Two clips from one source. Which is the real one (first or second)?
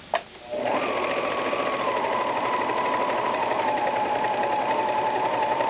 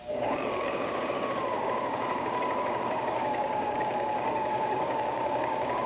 first